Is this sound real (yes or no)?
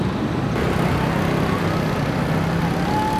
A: yes